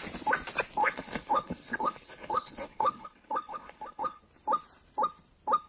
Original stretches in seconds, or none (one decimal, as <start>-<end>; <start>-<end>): 0.0-0.8; 4.2-5.7